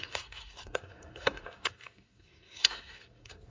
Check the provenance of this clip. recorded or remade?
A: remade